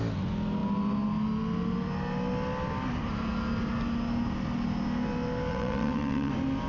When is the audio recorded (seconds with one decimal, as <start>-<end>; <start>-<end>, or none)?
0.0-5.5; 6.3-6.7